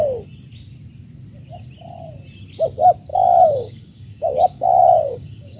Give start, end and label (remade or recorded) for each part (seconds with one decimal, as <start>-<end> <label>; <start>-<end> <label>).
0.0-3.1 recorded; 3.1-5.6 remade